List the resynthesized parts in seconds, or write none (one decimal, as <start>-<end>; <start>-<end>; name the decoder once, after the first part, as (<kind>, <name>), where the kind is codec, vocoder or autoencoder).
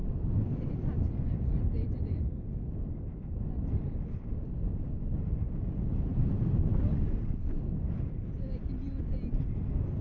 0.0-5.0 (vocoder, BigVGAN v2); 6.1-7.2